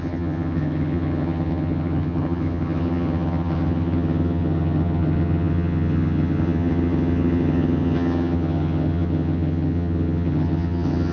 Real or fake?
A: fake